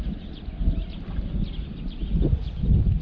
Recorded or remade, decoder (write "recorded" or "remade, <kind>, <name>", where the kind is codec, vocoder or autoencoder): recorded